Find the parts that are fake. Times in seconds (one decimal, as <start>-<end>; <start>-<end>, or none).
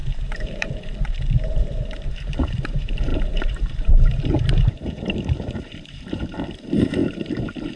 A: 0.0-7.8